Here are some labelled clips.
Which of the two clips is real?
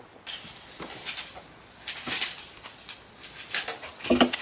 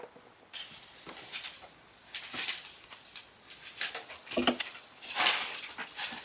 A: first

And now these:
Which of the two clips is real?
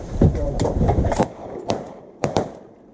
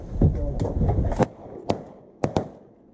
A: second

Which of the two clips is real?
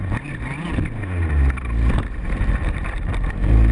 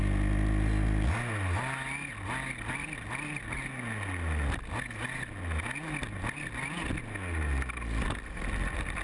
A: second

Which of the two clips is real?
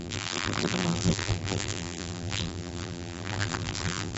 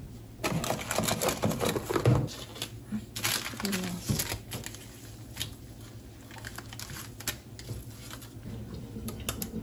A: second